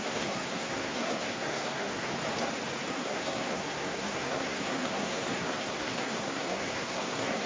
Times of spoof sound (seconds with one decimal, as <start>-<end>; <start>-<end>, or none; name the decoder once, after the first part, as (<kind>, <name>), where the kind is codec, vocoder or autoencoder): 0.0-2.1 (codec, SNAC); 2.9-7.5